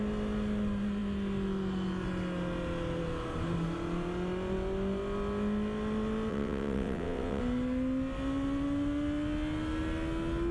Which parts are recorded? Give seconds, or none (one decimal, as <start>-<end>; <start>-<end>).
0.0-6.3; 7.4-10.5